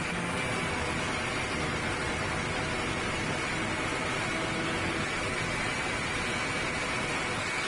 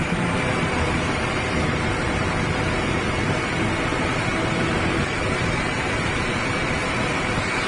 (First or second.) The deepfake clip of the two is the second